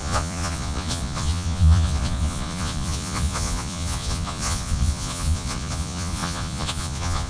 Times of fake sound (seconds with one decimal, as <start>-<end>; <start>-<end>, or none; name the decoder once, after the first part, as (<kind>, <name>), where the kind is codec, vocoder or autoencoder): 0.0-7.3 (vocoder, Vocos)